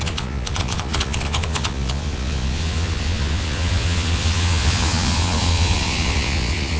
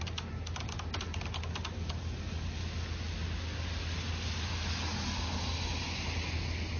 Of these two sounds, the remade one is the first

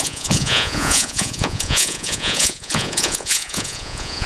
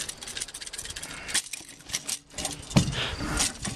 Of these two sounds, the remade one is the first